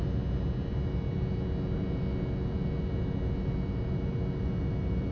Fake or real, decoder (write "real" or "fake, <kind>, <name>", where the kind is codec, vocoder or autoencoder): real